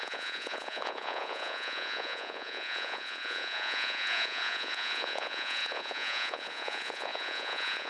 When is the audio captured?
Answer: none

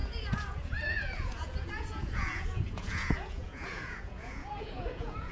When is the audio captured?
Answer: none

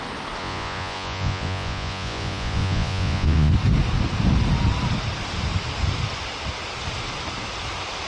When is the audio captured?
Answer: 0.0-0.4; 3.5-8.1

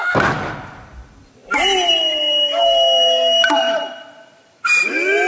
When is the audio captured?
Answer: 0.0-5.3

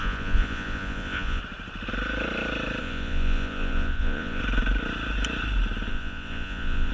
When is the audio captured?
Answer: 1.4-2.8; 4.4-5.9

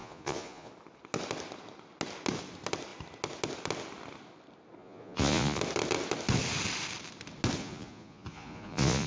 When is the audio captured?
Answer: 0.7-4.8; 5.6-7.6

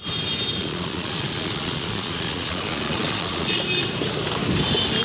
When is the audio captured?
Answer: 0.0-0.6; 3.6-5.0

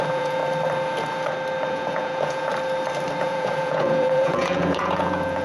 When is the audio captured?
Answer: 0.4-1.7; 2.5-3.2